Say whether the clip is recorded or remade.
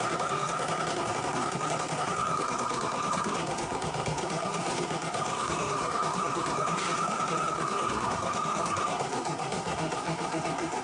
remade